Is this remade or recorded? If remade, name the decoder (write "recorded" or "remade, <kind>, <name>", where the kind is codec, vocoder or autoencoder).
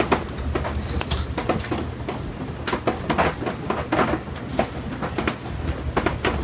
recorded